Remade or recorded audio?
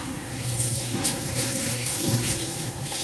remade